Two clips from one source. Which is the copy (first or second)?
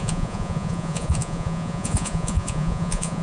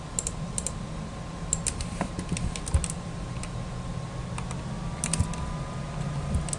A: first